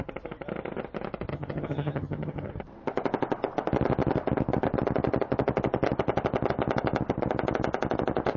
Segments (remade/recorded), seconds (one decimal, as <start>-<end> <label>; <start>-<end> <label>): 0.0-1.3 recorded; 1.3-2.5 remade; 2.5-8.4 recorded